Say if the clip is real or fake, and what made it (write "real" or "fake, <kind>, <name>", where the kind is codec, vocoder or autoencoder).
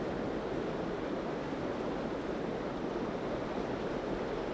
real